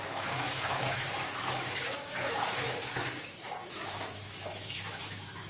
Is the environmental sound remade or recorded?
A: remade